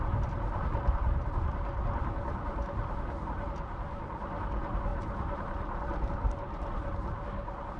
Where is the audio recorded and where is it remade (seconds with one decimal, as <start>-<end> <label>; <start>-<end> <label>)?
0.0-7.8 recorded